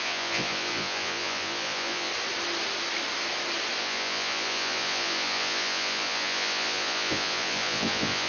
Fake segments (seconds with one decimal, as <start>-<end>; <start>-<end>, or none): 0.0-2.1; 3.8-8.3